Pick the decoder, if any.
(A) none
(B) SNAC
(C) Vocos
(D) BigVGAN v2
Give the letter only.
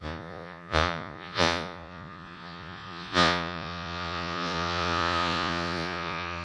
C